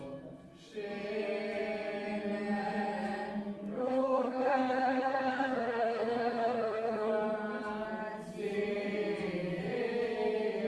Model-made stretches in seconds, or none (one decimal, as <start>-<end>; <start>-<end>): 3.8-7.1